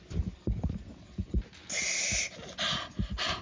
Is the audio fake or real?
real